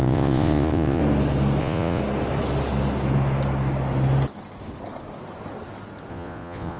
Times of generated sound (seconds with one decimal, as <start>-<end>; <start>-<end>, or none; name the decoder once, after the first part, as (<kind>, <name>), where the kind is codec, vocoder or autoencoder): 0.0-1.0 (vocoder, Vocos); 1.6-2.0; 6.1-6.8